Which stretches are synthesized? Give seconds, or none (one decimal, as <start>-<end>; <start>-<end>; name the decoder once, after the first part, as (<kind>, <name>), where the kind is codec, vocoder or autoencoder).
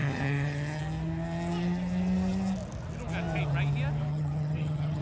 0.0-0.8 (vocoder, HiFi-GAN); 4.1-5.0